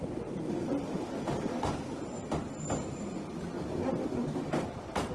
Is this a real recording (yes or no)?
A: yes